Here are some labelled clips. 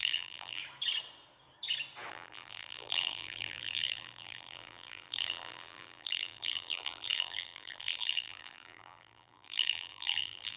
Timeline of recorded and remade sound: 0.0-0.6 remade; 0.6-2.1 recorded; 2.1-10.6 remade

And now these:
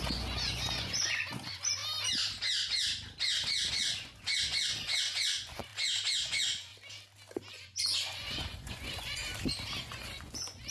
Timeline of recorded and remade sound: 0.0-1.8 remade; 1.8-3.7 recorded; 3.7-5.7 remade; 5.7-6.2 recorded; 6.2-6.7 remade; 6.7-7.5 recorded; 7.5-9.2 remade; 9.2-9.8 recorded; 9.8-10.7 remade

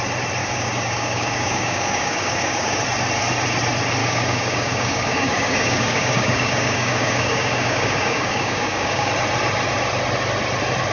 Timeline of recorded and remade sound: 0.0-0.4 recorded; 0.4-2.8 remade; 2.8-4.0 recorded; 4.0-9.1 remade; 9.1-10.9 recorded

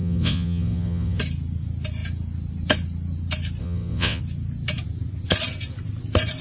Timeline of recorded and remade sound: 0.0-1.2 remade; 1.2-3.6 recorded; 3.6-4.2 remade; 4.2-6.4 recorded

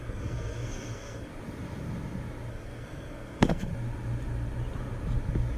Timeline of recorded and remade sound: 0.0-1.3 remade; 1.3-2.5 recorded; 2.5-3.7 remade; 3.7-5.6 recorded

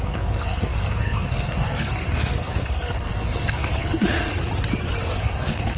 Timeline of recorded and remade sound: 0.0-4.3 remade; 4.3-5.0 recorded; 5.0-5.8 remade

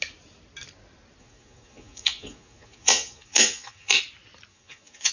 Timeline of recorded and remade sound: 0.0-1.2 recorded; 1.2-4.0 remade; 4.0-4.5 recorded; 4.5-5.1 remade

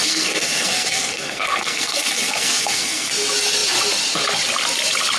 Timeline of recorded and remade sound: 0.0-3.1 remade; 3.1-5.2 recorded